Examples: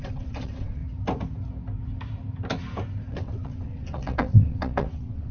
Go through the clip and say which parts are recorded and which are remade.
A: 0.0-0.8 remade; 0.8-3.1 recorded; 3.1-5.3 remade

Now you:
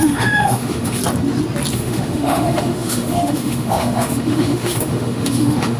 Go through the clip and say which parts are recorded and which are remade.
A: 0.0-1.0 remade; 1.0-1.7 recorded; 1.7-5.8 remade

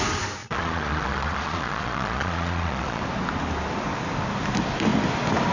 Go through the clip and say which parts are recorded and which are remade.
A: 0.0-0.4 recorded; 0.4-3.0 remade; 3.0-5.5 recorded

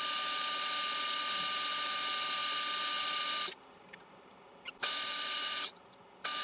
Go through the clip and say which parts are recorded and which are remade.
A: 0.0-6.4 recorded

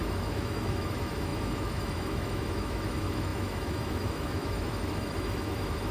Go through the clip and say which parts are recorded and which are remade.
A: 0.0-5.9 remade

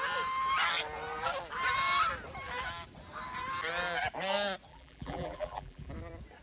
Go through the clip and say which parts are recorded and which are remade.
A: 0.0-4.7 recorded; 4.7-5.9 remade; 5.9-6.4 recorded